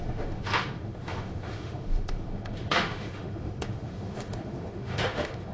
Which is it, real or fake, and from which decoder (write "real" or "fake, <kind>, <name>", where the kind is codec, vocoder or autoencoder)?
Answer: fake, autoencoder, DAC-VAE